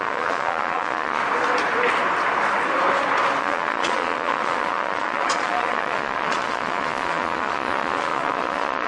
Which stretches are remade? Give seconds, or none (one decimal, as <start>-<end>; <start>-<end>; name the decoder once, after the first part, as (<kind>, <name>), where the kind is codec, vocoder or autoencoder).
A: 0.0-1.2 (vocoder, Vocos); 3.4-8.9